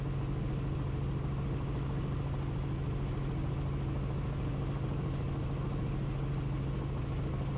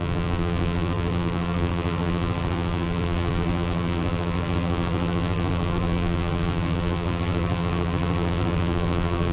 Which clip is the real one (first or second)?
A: first